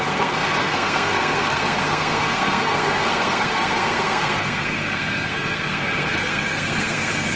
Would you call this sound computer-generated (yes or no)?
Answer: yes